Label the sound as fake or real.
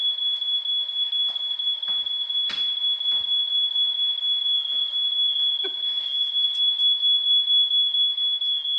real